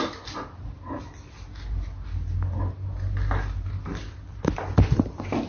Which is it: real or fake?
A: real